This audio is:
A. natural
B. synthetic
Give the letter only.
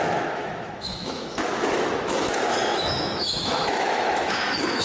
B